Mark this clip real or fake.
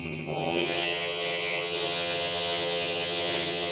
fake